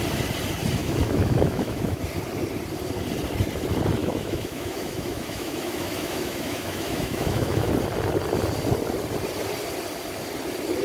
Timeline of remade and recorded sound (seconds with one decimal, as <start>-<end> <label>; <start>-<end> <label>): 0.0-0.8 recorded; 0.8-2.0 remade; 2.0-4.0 recorded; 4.0-7.7 remade; 7.7-10.8 recorded